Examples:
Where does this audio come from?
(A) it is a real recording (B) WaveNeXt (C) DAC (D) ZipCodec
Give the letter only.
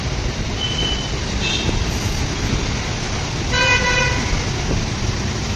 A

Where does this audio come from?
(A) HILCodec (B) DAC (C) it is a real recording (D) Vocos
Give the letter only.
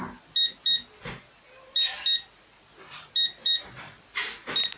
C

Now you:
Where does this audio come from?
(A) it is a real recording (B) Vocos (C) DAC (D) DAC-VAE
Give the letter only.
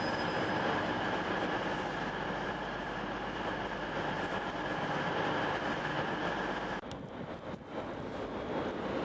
A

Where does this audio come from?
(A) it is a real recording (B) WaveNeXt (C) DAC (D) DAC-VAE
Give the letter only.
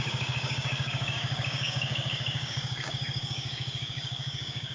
C